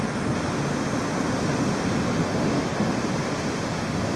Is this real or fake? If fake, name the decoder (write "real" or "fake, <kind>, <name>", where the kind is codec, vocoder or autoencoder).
real